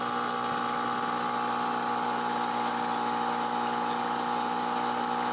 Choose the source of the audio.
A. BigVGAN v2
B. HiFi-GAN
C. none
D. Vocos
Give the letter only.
C